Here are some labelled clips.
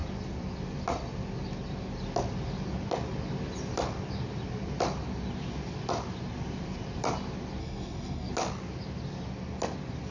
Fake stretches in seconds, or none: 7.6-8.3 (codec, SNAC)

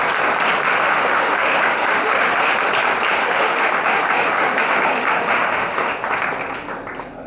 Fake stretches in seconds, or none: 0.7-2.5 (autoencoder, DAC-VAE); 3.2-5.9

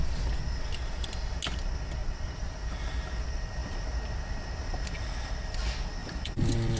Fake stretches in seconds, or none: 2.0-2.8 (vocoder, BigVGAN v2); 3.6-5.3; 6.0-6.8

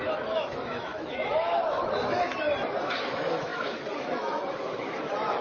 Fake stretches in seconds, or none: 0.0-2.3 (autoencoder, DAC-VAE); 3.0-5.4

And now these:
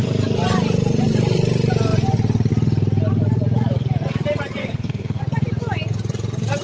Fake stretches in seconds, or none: 4.6-5.2 (codec, SNAC)

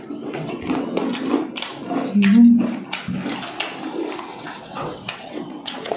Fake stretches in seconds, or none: 0.0-1.0 (vocoder, WaveNeXt); 4.2-6.0